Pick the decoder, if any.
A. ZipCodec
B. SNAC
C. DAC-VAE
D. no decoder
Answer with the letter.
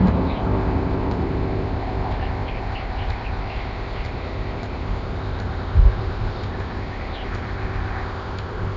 A